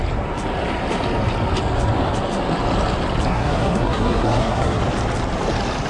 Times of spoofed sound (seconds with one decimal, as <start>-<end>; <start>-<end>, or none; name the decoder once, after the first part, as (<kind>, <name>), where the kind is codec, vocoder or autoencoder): 3.3-4.8 (codec, SNAC)